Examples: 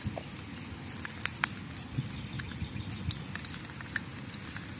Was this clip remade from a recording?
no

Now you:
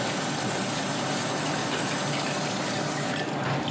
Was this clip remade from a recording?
no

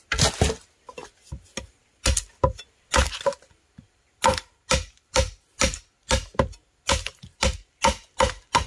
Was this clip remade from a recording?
no